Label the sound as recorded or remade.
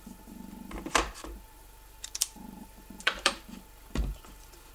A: remade